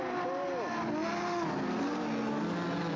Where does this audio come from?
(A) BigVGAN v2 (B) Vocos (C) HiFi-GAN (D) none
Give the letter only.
D